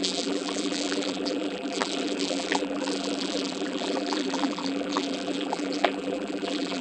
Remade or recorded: remade